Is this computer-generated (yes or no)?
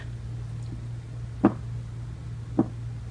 no